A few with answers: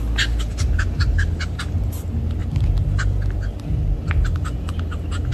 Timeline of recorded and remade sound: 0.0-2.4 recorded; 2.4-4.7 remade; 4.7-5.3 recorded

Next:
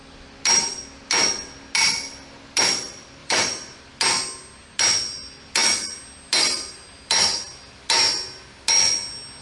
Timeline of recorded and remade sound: 0.0-3.2 recorded; 3.2-3.8 remade; 3.8-9.4 recorded

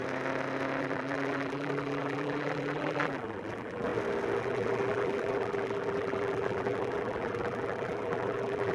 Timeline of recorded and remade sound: 0.0-0.8 recorded; 0.8-3.9 remade; 3.9-4.4 recorded; 4.4-8.7 remade